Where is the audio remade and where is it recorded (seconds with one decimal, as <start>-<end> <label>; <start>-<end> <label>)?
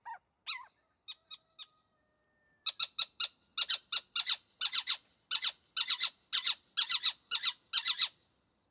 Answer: 0.0-8.7 recorded